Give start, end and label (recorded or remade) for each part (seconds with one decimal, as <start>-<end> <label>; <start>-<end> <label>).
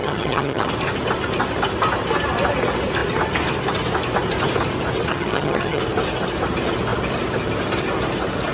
0.0-0.7 remade; 0.7-5.1 recorded; 5.1-5.8 remade; 5.8-8.5 recorded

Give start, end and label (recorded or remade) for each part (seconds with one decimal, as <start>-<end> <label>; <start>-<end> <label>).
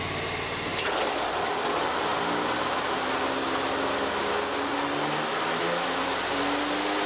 0.0-7.1 recorded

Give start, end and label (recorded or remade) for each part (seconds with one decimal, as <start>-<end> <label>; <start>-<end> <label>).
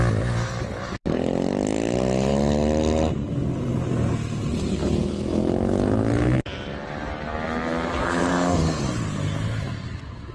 0.0-8.0 recorded; 8.0-8.8 remade; 8.8-10.3 recorded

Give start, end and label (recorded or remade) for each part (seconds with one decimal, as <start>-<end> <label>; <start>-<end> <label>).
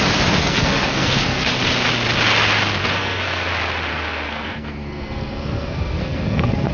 0.0-0.4 recorded; 0.4-1.5 remade; 1.5-2.8 recorded; 2.8-3.5 remade; 3.5-3.9 recorded; 3.9-6.7 remade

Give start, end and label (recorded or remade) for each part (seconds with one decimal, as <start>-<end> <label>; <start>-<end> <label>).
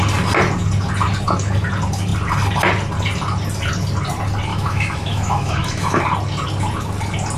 0.0-4.5 recorded; 4.5-6.0 remade; 6.0-7.4 recorded